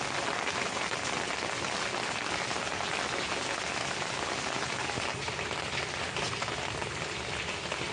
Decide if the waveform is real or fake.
real